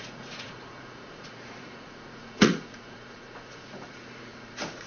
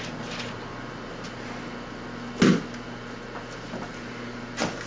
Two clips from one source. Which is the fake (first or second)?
first